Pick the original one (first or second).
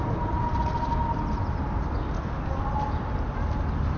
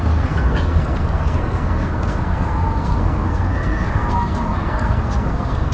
first